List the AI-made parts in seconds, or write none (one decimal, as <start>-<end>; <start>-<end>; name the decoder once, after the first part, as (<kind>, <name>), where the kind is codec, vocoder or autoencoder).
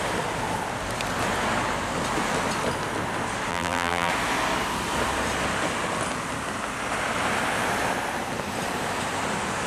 3.5-4.1 (vocoder, BigVGAN v2)